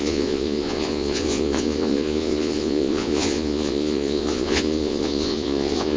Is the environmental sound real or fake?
fake